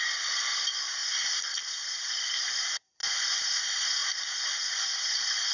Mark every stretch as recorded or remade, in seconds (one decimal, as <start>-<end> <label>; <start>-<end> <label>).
0.0-5.5 recorded